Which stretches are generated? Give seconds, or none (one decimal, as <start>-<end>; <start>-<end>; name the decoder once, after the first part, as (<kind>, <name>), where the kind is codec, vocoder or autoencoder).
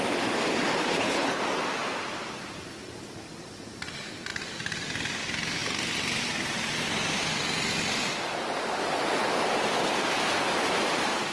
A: 0.8-1.4 (codec, HILCodec)